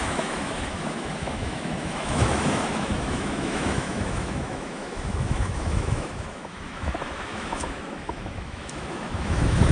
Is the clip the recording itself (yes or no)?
no